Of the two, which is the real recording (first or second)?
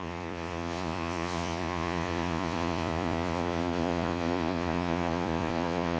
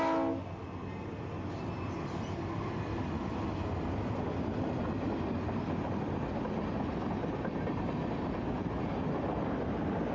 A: second